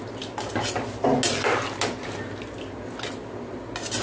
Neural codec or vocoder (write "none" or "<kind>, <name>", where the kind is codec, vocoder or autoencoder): none